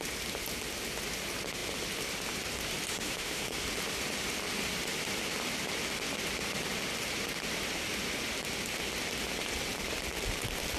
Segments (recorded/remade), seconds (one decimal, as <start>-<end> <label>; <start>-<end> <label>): 0.0-2.9 recorded; 2.9-3.6 remade; 3.6-10.8 recorded